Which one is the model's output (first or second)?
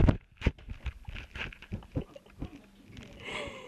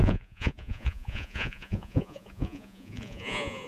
second